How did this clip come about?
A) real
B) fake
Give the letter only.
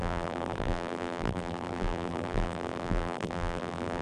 B